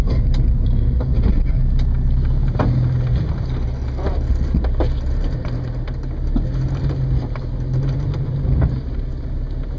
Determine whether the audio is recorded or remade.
recorded